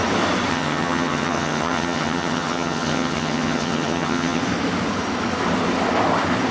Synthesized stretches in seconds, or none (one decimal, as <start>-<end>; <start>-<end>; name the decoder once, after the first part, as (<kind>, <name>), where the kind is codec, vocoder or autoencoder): 0.5-4.4 (vocoder, HiFi-GAN)